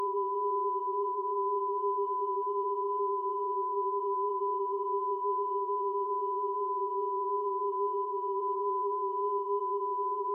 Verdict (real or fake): fake